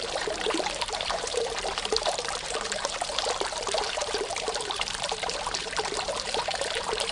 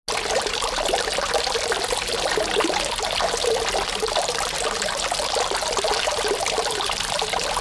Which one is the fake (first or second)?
first